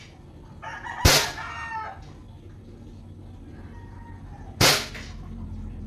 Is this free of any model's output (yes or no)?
yes